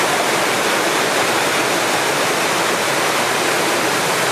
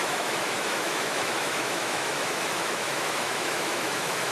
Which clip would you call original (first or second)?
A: first